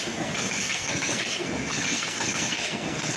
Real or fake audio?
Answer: fake